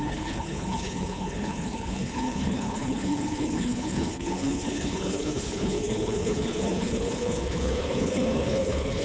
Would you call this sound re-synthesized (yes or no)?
yes